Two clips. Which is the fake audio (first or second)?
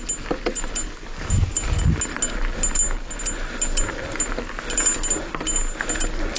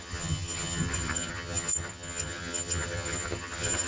second